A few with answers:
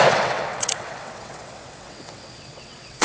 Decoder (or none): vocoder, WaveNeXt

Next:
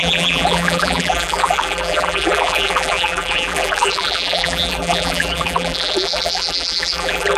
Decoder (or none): vocoder, BigVGAN v2